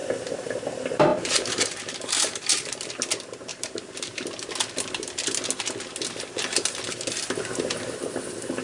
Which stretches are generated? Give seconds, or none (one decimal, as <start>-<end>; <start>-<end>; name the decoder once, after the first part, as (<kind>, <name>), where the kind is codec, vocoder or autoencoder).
0.0-0.6 (vocoder, BigVGAN v2); 1.1-2.9; 3.5-4.2